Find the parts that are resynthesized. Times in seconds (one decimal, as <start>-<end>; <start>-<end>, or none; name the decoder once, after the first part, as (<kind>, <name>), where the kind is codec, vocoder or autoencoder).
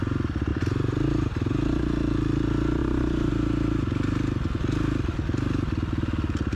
0.5-1.8 (vocoder, BigVGAN v2); 2.8-3.3